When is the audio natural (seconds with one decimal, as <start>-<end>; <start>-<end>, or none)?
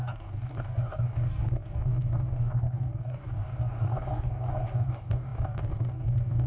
none